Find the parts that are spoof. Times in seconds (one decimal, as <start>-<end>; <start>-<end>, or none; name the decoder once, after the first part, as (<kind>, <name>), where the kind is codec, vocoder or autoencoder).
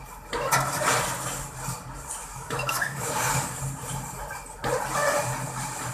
2.2-3.6 (codec, DAC)